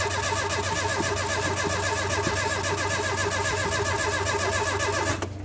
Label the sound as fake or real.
real